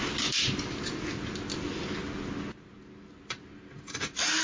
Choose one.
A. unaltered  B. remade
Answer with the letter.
A